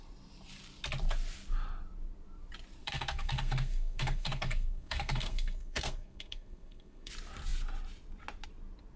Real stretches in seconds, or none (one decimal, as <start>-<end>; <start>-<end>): 0.0-2.8; 7.1-9.0